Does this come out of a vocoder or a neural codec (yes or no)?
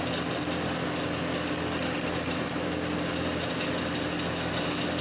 no